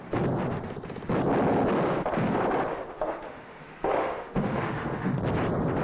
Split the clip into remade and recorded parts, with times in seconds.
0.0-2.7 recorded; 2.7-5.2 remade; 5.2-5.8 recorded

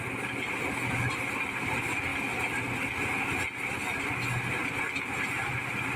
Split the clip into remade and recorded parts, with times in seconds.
0.0-6.0 recorded

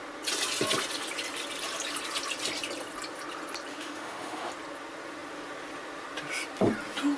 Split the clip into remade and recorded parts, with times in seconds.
0.0-3.7 recorded; 3.7-4.5 remade; 4.5-7.2 recorded